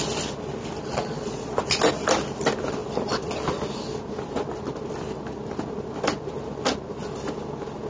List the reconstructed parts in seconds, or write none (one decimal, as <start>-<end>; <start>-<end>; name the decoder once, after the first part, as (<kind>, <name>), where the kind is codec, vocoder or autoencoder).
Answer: 0.9-1.6 (vocoder, Vocos)